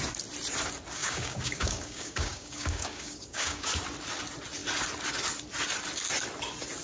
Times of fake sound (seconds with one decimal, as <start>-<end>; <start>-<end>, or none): 1.0-3.7